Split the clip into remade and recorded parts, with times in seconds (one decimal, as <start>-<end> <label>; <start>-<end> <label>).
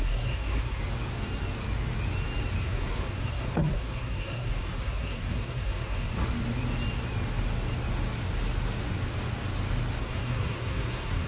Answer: 0.0-0.8 remade; 0.8-2.6 recorded; 2.6-6.1 remade; 6.1-10.0 recorded; 10.0-11.3 remade